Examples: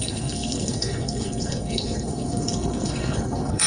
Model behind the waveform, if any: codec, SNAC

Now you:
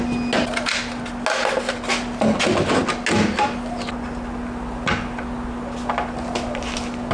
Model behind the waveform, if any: none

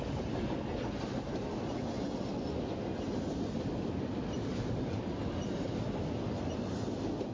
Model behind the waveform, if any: none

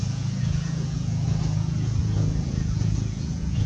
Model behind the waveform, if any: vocoder, Vocos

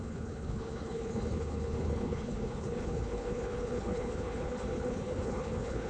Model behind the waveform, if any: codec, HILCodec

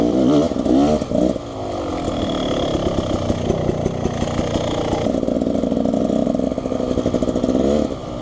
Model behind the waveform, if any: none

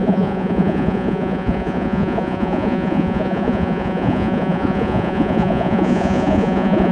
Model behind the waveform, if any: vocoder, Vocos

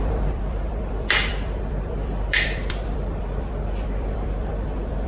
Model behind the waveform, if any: vocoder, BigVGAN v2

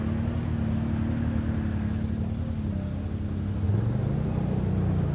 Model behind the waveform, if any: none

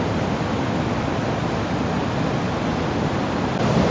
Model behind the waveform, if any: none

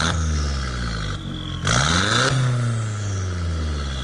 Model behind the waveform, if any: none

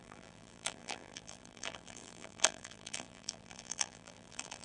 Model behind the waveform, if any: vocoder, BigVGAN v2